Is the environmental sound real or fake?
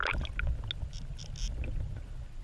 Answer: real